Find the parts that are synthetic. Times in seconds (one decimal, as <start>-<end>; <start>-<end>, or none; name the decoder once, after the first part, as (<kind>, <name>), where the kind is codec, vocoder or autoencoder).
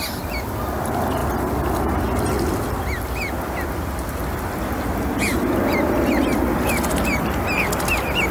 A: 1.2-2.0 (vocoder, BigVGAN v2)